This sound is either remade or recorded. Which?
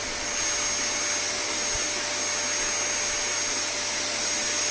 recorded